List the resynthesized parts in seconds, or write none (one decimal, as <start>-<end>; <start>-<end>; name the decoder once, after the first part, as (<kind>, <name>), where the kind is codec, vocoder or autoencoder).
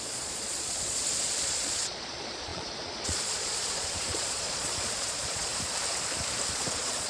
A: 0.0-5.5 (vocoder, Vocos); 6.5-7.1